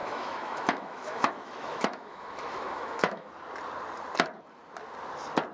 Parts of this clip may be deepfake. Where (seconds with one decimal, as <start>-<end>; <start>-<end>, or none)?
0.0-3.3